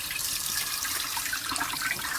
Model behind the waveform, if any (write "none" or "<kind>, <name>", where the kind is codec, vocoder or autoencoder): vocoder, BigVGAN v2